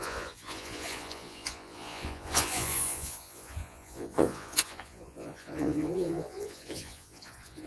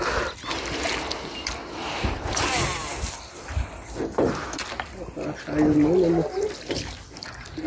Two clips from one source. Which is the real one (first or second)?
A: second